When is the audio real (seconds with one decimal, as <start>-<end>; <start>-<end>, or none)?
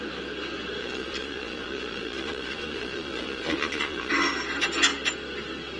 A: 0.0-0.8; 4.1-5.8